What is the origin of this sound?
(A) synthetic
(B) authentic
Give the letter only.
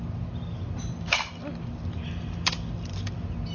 B